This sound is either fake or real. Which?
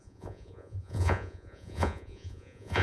fake